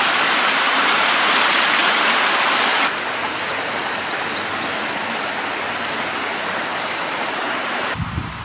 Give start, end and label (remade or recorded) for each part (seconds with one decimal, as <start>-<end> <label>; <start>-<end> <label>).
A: 0.0-0.8 recorded; 0.8-1.3 remade; 1.3-1.8 recorded; 1.8-4.0 remade; 4.0-6.7 recorded; 6.7-8.4 remade